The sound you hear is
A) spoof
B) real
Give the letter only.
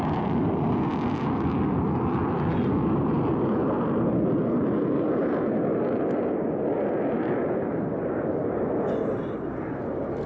B